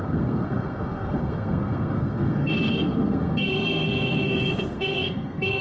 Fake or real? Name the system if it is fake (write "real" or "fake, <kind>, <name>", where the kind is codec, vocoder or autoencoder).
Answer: fake, codec, SNAC